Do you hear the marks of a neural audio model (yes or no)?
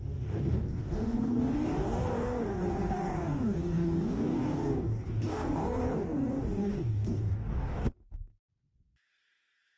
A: yes